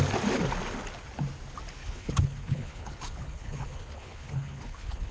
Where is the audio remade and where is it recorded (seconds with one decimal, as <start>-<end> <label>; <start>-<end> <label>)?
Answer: 0.0-1.8 recorded; 1.8-5.1 remade